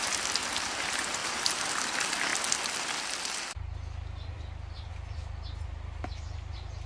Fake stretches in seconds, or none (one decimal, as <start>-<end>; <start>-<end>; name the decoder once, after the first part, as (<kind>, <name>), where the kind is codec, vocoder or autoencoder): 1.2-1.7 (vocoder, BigVGAN v2)